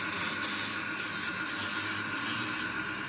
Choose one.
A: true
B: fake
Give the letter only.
A